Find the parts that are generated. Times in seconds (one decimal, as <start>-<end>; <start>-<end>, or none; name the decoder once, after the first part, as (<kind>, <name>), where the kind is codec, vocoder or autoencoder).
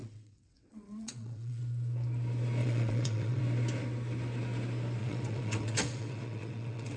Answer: 0.0-1.6 (vocoder, WaveNeXt); 2.6-3.4; 5.0-7.0